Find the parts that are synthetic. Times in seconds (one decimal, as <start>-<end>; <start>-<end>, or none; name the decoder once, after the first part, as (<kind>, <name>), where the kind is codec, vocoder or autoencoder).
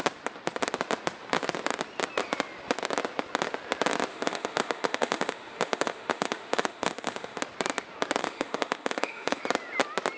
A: 4.1-7.4 (autoencoder, DAC-VAE); 8.2-9.4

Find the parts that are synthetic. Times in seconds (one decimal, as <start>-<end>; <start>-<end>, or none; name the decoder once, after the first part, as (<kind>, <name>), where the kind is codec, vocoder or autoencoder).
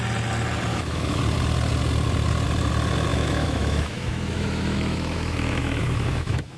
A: 0.7-1.2 (autoencoder, DAC-VAE); 3.1-6.6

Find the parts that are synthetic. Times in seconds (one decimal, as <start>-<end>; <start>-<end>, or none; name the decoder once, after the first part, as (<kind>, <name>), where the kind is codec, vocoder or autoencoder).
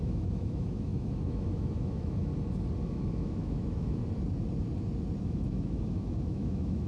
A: 0.0-2.3 (autoencoder, DAC-VAE); 2.8-4.0; 5.2-6.9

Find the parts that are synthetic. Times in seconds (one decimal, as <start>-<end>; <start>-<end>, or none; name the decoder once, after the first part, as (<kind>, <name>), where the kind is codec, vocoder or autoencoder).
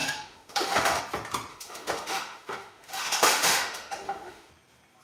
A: 0.0-1.0 (autoencoder, DAC-VAE); 1.5-4.5